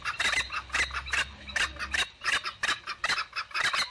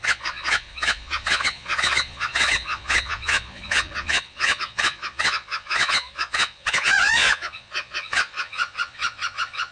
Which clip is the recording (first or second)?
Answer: first